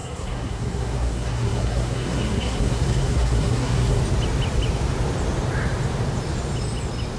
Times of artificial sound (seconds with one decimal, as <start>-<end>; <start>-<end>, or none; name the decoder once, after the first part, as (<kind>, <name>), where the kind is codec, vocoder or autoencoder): 0.0-4.0 (codec, SNAC)